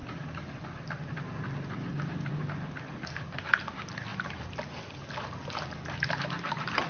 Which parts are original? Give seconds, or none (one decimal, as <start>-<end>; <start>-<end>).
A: 0.0-6.9